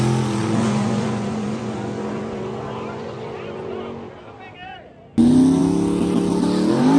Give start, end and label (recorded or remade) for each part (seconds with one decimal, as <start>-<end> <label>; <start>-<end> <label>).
0.0-0.4 recorded; 0.4-3.8 remade; 3.8-7.0 recorded